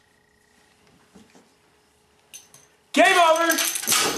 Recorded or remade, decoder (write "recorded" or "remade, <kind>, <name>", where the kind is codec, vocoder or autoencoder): recorded